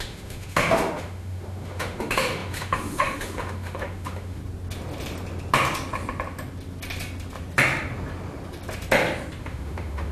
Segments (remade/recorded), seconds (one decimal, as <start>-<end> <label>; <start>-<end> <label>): 0.0-4.4 remade; 4.4-9.4 recorded; 9.4-10.1 remade

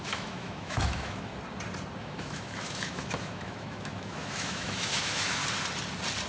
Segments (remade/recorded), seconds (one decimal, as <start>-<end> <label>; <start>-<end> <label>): 0.0-1.3 remade; 1.3-2.0 recorded; 2.0-5.4 remade; 5.4-6.3 recorded

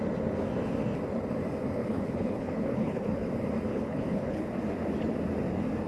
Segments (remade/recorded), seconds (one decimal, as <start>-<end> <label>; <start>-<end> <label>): 0.0-1.8 recorded; 1.8-3.3 remade; 3.3-3.7 recorded; 3.7-4.5 remade; 4.5-5.9 recorded

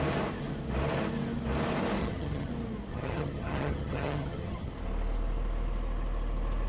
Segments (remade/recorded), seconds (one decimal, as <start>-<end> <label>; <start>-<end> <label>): 0.0-2.0 recorded; 2.0-2.5 remade; 2.5-2.9 recorded; 2.9-4.7 remade; 4.7-6.7 recorded

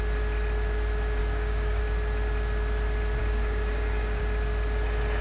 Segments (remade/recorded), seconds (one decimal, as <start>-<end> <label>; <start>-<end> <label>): 0.0-1.2 recorded; 1.2-1.8 remade; 1.8-3.2 recorded; 3.2-4.2 remade; 4.2-5.2 recorded

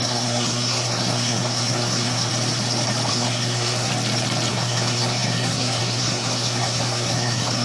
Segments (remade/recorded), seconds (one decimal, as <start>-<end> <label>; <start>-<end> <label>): 0.0-2.3 remade; 2.3-3.1 recorded; 3.1-3.9 remade; 3.9-4.5 recorded; 4.5-7.6 remade

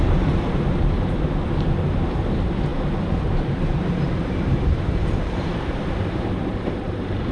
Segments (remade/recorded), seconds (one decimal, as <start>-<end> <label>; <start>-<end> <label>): 0.0-7.3 remade